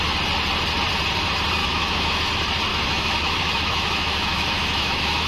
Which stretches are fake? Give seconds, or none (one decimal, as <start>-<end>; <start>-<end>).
1.6-2.3; 2.7-5.3